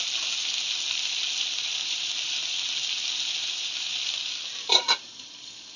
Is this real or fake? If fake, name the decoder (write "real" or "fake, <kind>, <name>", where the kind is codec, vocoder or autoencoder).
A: real